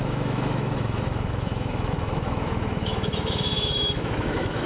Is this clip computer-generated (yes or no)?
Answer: yes